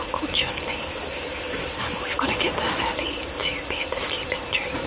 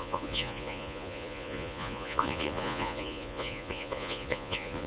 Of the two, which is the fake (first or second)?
second